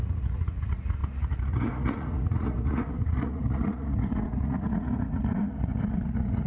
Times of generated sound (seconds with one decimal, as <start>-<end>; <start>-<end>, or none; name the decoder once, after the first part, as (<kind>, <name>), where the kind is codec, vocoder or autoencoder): 0.0-6.5 (vocoder, Vocos)